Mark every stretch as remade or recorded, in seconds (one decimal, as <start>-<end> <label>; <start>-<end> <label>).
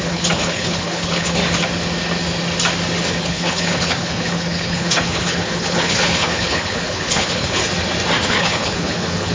0.0-1.4 remade; 1.4-3.2 recorded; 3.2-7.6 remade; 7.6-8.3 recorded; 8.3-9.3 remade